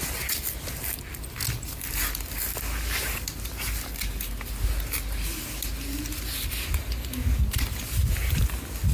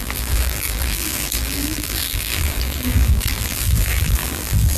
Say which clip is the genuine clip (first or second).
first